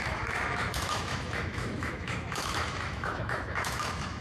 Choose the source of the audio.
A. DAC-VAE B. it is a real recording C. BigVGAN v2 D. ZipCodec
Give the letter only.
A